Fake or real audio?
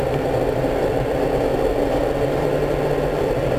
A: real